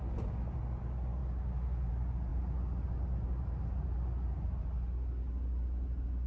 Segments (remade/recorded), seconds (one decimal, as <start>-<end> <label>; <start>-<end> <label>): 0.0-6.3 recorded